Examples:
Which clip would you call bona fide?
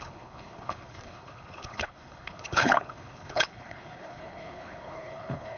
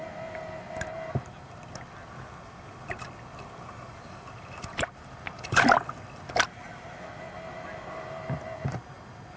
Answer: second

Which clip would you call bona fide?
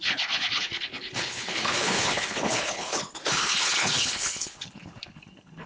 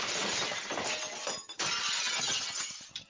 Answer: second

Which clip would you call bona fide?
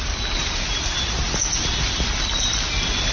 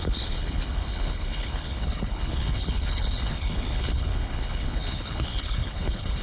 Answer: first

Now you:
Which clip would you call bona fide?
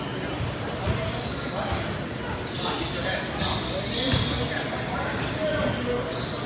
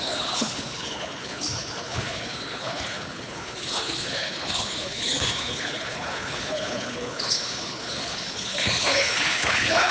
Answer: first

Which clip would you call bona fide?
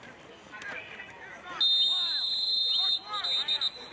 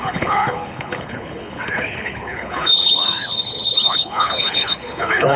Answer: first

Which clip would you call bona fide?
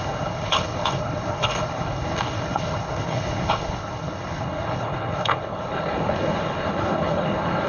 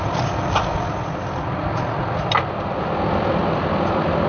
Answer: second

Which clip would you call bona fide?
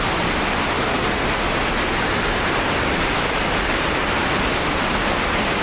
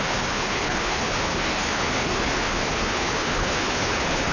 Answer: first